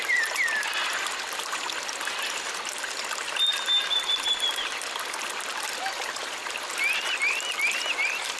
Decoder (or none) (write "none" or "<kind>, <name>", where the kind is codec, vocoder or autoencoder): none